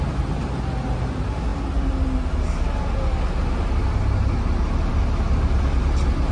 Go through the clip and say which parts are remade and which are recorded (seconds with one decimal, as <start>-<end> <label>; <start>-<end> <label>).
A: 0.0-6.3 recorded